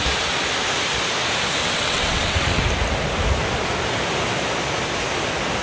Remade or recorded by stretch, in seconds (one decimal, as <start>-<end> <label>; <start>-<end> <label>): 0.0-1.6 recorded; 1.6-2.6 remade; 2.6-5.6 recorded